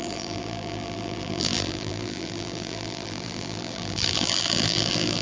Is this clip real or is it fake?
fake